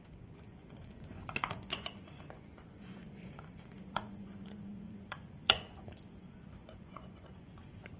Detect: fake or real fake